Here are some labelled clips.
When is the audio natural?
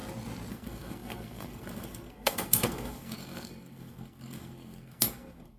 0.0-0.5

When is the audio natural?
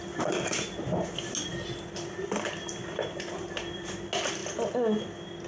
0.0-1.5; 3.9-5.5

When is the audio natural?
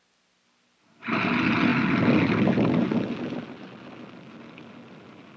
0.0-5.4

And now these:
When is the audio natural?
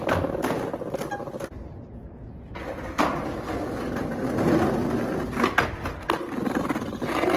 0.0-2.0; 2.6-7.4